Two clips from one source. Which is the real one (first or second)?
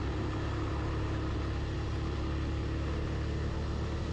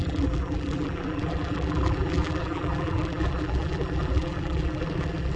first